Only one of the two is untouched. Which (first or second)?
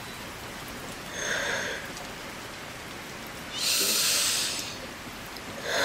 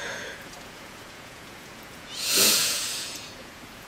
first